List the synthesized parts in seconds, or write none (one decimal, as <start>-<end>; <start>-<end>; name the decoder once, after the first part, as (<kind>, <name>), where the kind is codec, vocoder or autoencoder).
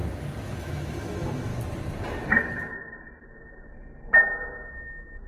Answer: 0.6-1.5 (autoencoder, DAC-VAE); 4.7-5.3